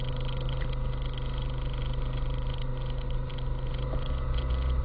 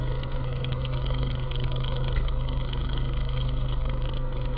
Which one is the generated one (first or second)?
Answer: second